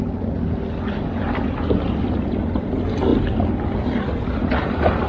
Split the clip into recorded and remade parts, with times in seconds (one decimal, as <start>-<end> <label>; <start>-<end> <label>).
0.0-5.1 recorded